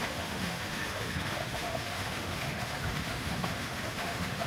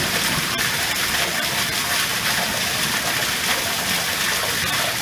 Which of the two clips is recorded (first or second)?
second